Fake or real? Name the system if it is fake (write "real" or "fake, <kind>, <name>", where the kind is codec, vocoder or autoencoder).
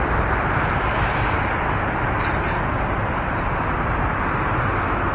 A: real